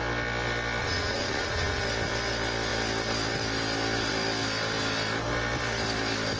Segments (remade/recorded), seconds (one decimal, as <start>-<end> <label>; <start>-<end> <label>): 0.0-0.8 recorded; 0.8-1.8 remade; 1.8-6.4 recorded